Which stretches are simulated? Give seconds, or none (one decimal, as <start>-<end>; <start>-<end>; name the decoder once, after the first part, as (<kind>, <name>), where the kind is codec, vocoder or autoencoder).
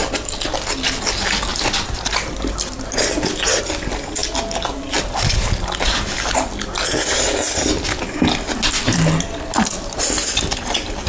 none